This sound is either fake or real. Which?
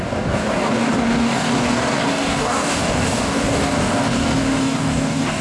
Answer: fake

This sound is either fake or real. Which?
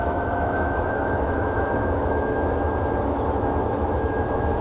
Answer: fake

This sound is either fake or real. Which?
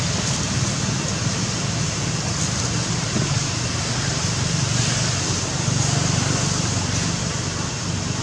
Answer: real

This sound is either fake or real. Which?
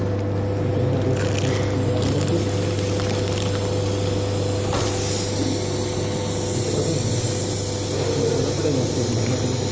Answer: real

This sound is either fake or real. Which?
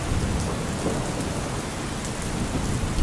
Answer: real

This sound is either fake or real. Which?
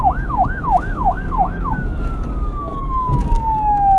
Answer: fake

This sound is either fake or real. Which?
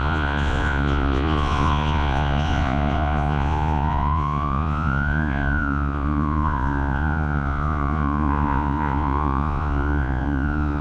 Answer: fake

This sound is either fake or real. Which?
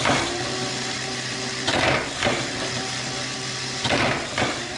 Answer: real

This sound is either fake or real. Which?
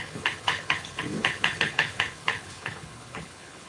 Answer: fake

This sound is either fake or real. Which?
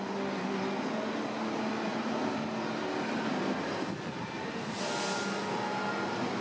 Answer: real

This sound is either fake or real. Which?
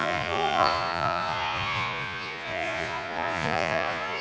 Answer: fake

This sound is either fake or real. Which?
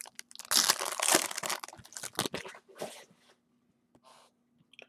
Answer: real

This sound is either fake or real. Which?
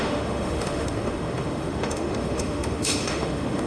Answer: fake